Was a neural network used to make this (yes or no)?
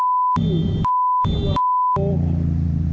no